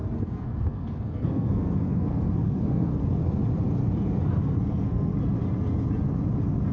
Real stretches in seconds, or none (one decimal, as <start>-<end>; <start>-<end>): 3.2-4.6; 5.1-6.7